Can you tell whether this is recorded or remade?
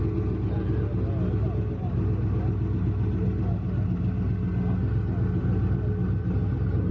recorded